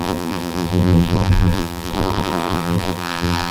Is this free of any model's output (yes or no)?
no